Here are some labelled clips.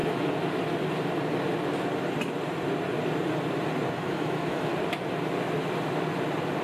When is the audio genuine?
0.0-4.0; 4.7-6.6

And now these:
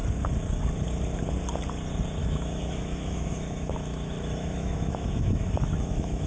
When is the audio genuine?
0.0-2.2

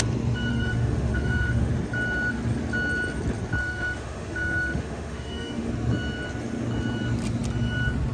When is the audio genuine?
0.0-0.5; 1.7-3.6; 5.7-8.1

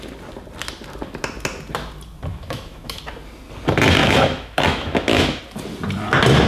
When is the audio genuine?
0.0-2.3; 3.0-4.0; 5.4-6.5

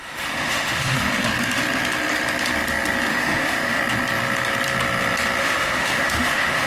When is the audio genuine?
1.1-3.1; 3.8-5.4

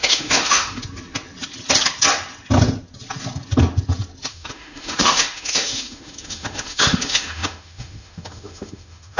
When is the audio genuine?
0.8-4.3

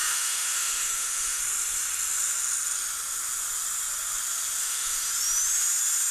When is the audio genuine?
1.4-4.6; 5.1-6.1

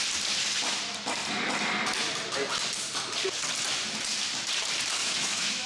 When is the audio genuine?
0.0-5.0